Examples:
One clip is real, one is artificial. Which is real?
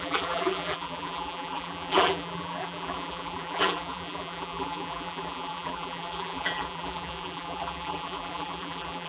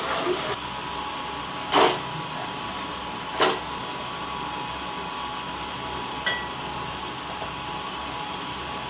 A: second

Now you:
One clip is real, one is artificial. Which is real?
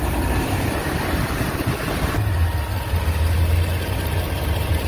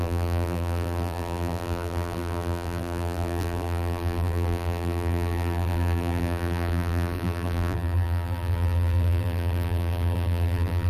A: first